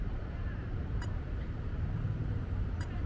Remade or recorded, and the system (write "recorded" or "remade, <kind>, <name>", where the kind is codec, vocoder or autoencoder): remade, vocoder, BigVGAN v2